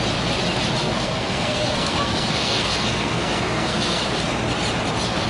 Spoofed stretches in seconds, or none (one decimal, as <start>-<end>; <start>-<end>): 0.8-4.0